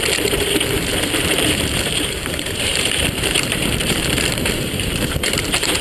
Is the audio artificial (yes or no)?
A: yes